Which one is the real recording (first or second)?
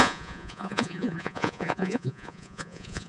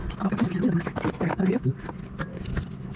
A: second